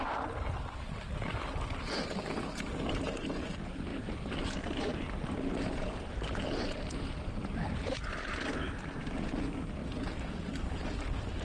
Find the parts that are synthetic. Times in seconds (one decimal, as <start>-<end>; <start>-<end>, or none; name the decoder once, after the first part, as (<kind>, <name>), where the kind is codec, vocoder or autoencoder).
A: none